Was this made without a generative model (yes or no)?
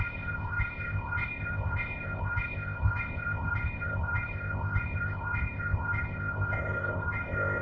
no